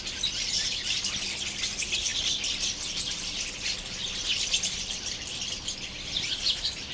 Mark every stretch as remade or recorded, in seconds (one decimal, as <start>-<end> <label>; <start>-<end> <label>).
0.0-6.9 recorded